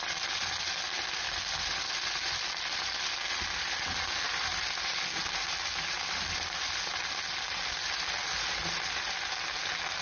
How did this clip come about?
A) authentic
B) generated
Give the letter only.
A